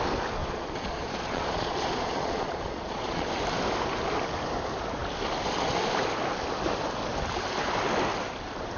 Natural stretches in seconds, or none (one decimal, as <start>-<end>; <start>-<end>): 0.0-0.4; 3.3-8.8